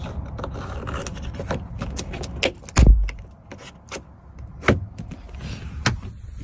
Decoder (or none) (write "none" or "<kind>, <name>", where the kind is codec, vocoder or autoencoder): none